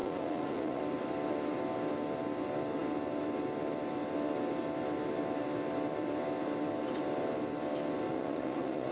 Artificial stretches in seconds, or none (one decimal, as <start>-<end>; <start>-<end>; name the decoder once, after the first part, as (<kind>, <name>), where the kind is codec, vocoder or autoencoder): 0.0-0.8 (vocoder, Vocos); 8.1-8.9